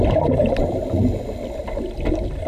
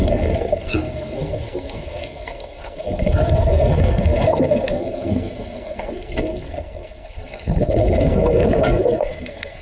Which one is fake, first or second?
second